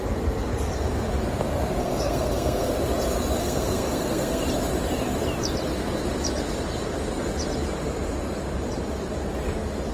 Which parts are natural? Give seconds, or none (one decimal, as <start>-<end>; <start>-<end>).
0.0-1.8; 2.7-3.4; 4.4-9.9